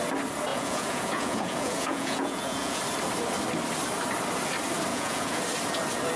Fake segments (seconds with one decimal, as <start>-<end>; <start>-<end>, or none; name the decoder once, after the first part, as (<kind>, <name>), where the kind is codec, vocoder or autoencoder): 0.5-2.8 (vocoder, Vocos); 4.9-5.4